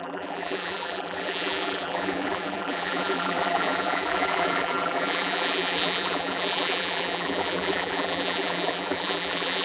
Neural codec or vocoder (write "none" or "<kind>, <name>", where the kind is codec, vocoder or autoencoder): vocoder, BigVGAN v2